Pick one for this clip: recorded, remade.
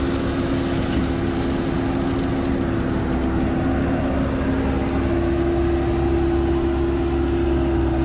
recorded